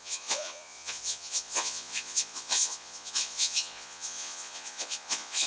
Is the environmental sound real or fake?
fake